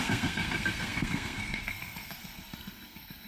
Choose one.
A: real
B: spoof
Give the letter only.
B